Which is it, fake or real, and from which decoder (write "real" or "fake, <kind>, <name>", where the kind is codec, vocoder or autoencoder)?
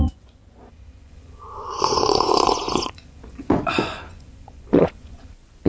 fake, vocoder, Vocos